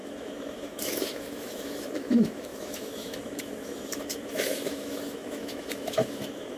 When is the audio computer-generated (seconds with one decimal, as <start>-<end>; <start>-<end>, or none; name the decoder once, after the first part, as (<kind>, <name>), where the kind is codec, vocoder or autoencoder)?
0.0-6.6 (autoencoder, DAC-VAE)